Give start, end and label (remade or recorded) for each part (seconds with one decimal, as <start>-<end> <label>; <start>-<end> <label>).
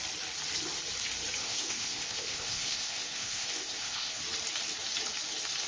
0.0-1.4 recorded; 1.4-4.2 remade; 4.2-5.7 recorded